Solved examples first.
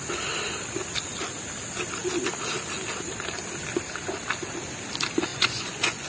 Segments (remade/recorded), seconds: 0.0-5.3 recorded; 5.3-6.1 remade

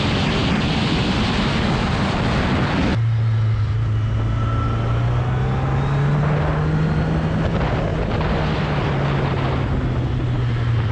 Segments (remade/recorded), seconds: 0.0-10.9 recorded

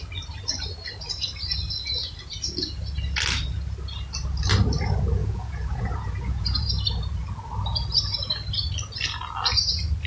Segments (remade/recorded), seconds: 0.0-5.2 recorded; 5.2-6.7 remade; 6.7-10.1 recorded